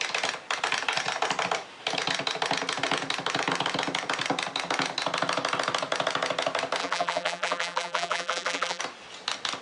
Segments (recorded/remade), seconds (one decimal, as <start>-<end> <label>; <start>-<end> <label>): 0.0-6.8 recorded; 6.8-8.8 remade; 8.8-9.6 recorded

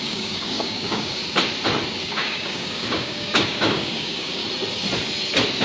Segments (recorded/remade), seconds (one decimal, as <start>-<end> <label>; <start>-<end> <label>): 0.0-1.2 remade; 1.2-2.0 recorded; 2.0-4.4 remade; 4.4-5.6 recorded

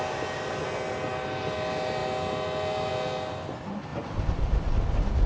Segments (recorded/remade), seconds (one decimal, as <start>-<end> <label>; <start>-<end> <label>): 0.0-5.3 recorded

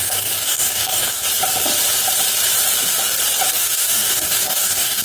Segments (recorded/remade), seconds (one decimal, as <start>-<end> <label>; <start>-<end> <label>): 0.0-1.2 remade; 1.2-3.5 recorded; 3.5-5.0 remade

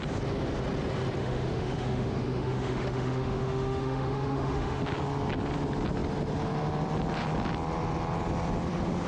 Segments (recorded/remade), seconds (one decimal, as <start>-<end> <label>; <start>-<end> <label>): 0.0-1.2 recorded; 1.2-4.8 remade; 4.8-9.1 recorded

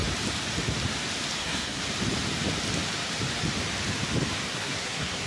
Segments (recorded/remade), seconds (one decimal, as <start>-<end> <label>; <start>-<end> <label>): 0.0-1.4 recorded; 1.4-1.8 remade; 1.8-4.5 recorded; 4.5-5.3 remade

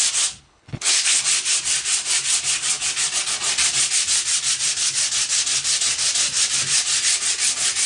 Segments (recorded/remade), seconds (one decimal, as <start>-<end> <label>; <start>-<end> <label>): 0.0-0.4 recorded; 0.4-1.2 remade; 1.2-7.9 recorded